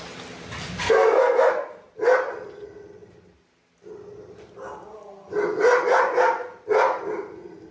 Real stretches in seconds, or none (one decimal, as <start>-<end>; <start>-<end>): 0.0-0.8; 1.5-7.7